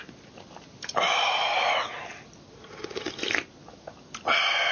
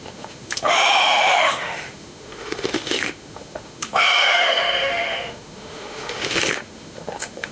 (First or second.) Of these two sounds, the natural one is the first